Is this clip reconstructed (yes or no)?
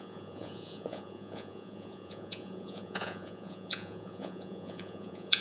yes